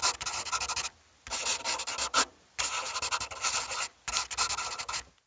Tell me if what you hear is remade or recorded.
recorded